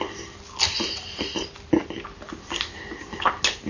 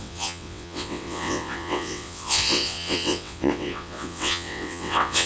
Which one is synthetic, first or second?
second